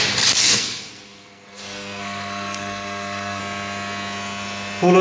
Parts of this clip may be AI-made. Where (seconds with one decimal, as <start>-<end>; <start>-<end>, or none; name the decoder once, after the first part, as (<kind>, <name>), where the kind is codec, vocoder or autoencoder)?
0.4-3.4 (codec, SNAC)